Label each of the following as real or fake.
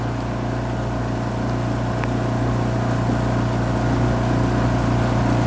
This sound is real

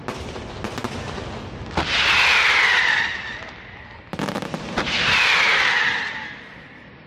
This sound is real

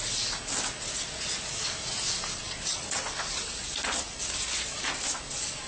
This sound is real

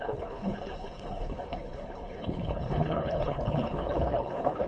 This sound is fake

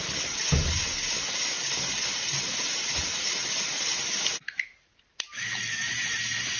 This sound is real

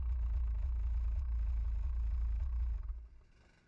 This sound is real